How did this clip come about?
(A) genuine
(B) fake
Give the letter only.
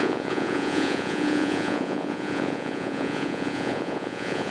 B